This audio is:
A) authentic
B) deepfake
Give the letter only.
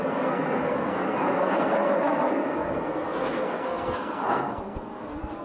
B